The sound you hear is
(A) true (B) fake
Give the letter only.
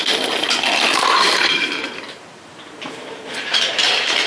B